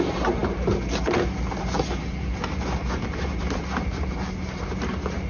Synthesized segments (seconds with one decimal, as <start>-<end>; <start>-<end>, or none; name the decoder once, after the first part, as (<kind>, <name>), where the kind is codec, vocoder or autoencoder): none